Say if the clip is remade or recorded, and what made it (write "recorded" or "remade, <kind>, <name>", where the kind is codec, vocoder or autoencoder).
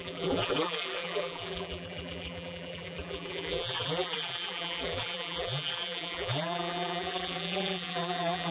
remade, vocoder, BigVGAN v2